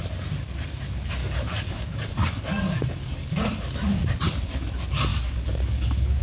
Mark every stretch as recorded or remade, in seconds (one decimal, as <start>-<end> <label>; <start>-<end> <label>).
0.0-1.2 recorded; 1.2-3.6 remade; 3.6-5.1 recorded; 5.1-6.2 remade